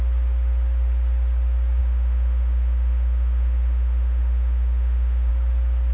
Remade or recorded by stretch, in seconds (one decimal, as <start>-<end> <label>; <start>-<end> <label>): 0.0-1.8 recorded; 1.8-5.3 remade; 5.3-5.9 recorded